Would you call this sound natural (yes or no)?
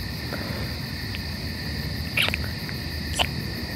yes